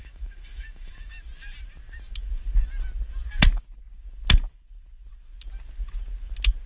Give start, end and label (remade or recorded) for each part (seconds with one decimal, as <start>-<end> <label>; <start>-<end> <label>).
0.0-1.2 remade; 1.2-6.7 recorded